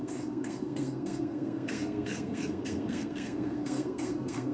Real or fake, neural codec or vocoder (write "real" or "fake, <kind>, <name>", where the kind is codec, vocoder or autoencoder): fake, codec, SNAC